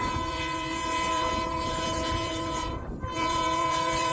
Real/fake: fake